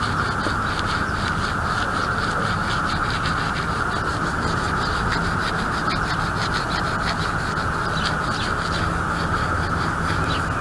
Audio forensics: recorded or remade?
recorded